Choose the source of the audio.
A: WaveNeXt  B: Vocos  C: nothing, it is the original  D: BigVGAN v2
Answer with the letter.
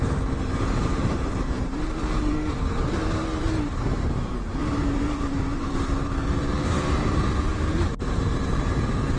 D